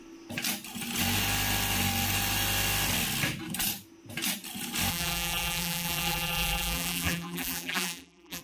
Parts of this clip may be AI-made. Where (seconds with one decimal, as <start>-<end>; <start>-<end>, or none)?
4.9-8.4